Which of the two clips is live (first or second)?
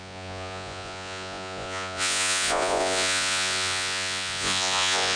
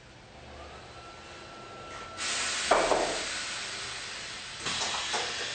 second